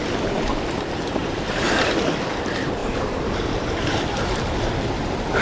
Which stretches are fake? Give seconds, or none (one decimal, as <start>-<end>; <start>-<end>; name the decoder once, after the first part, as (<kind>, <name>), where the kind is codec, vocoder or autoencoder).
1.2-1.9 (vocoder, BigVGAN v2); 2.8-4.5